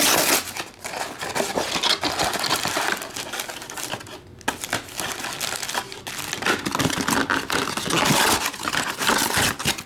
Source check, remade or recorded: recorded